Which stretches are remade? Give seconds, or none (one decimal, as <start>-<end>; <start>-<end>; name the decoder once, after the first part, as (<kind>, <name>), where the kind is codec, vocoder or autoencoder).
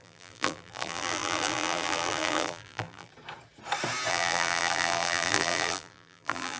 0.0-3.1 (vocoder, BigVGAN v2); 4.1-6.6